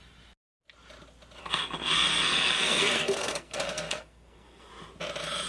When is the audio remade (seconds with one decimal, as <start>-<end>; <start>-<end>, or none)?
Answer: 1.4-4.7